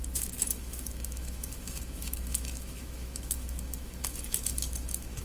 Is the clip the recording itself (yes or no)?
no